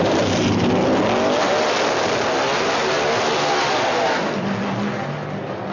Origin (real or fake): real